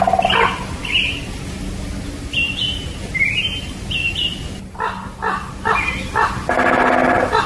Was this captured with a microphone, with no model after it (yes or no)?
yes